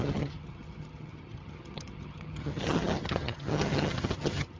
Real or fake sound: fake